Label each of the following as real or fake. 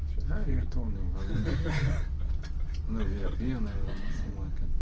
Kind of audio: real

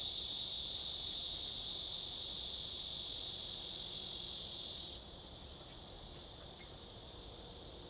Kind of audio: real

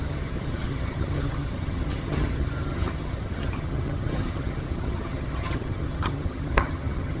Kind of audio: fake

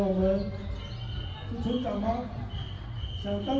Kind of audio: real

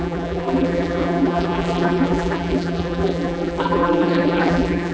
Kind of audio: fake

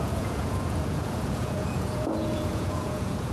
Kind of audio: fake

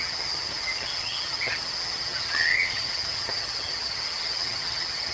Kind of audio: fake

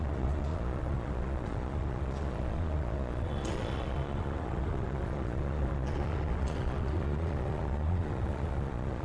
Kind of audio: fake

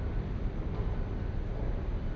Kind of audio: real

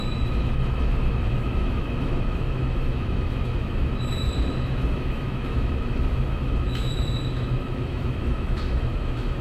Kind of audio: fake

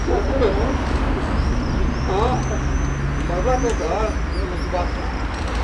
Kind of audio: real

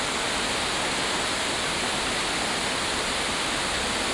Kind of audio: real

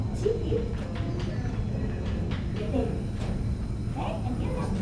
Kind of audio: real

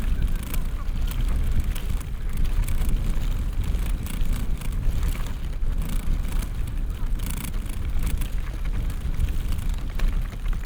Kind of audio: real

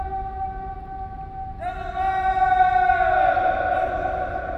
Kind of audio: real